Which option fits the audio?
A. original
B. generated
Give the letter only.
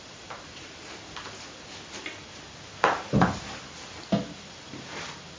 A